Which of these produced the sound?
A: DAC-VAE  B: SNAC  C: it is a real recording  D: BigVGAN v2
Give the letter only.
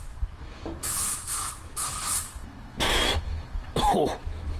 A